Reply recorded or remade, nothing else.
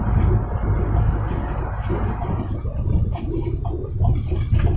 recorded